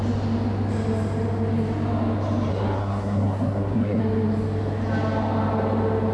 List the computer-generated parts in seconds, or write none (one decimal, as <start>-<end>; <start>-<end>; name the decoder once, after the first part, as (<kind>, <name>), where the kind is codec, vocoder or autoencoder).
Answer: 2.5-4.0 (codec, SNAC)